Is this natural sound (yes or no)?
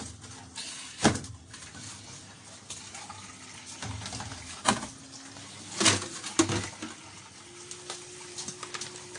yes